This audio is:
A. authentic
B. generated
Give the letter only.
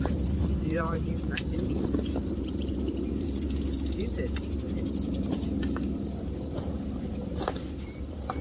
B